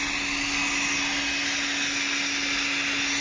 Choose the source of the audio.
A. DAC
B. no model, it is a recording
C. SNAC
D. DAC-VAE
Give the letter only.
B